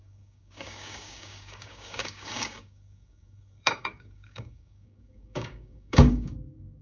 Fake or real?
fake